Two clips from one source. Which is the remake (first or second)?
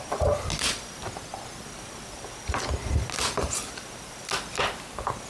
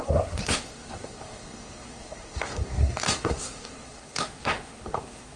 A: second